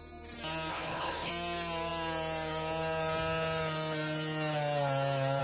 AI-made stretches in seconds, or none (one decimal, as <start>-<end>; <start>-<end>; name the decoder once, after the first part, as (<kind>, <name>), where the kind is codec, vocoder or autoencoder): 0.7-1.3 (codec, HILCodec)